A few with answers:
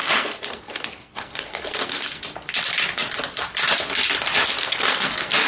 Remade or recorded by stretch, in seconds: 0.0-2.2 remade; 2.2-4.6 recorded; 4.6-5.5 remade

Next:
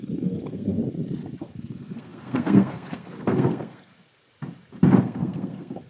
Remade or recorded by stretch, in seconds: 0.0-0.8 remade; 0.8-1.4 recorded; 1.4-3.9 remade; 3.9-5.0 recorded; 5.0-5.9 remade

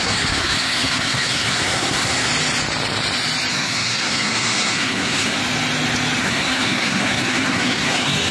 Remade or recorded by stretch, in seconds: 0.0-2.3 remade; 2.3-3.5 recorded; 3.5-5.4 remade; 5.4-6.2 recorded; 6.2-8.3 remade

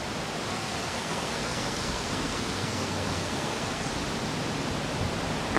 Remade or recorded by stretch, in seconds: 0.0-0.5 recorded; 0.5-3.9 remade; 3.9-5.6 recorded

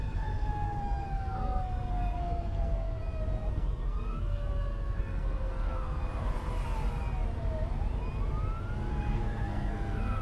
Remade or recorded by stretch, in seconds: 0.0-3.0 remade; 3.0-3.5 recorded; 3.5-6.0 remade; 6.0-8.9 recorded; 8.9-10.2 remade

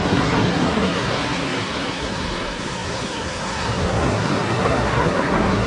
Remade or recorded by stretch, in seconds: 0.0-5.7 remade

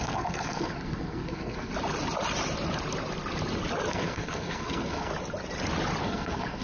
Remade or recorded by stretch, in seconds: 0.0-1.7 remade; 1.7-3.9 recorded; 3.9-5.1 remade; 5.1-6.0 recorded; 6.0-6.6 remade